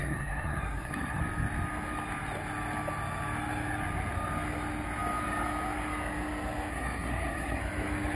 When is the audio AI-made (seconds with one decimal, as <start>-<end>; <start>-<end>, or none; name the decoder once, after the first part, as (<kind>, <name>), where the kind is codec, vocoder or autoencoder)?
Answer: 0.0-1.2 (codec, SNAC); 6.7-7.6